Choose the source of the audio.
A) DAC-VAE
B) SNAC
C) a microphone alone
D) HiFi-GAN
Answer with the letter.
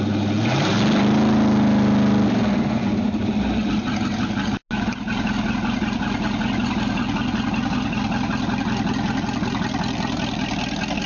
C